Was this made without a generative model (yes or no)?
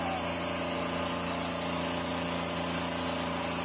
yes